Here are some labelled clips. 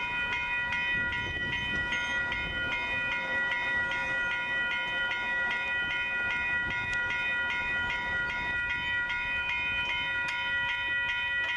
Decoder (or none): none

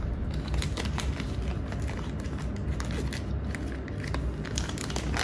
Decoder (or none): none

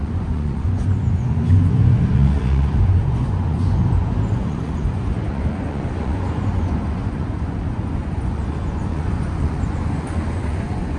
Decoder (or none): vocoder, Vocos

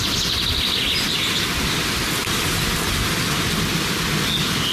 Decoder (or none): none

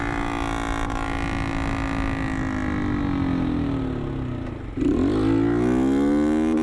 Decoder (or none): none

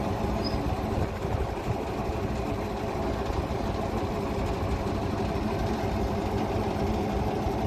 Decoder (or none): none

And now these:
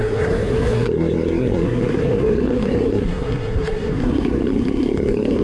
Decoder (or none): codec, SNAC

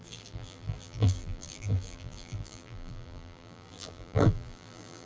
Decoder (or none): vocoder, BigVGAN v2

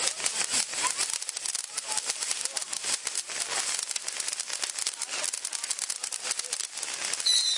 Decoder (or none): none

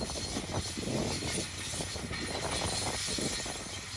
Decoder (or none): none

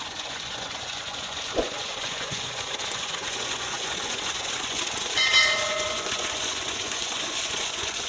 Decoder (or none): vocoder, Vocos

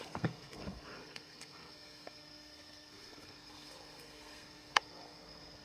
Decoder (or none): codec, SNAC